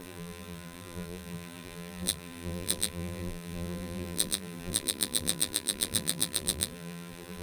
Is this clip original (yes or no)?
no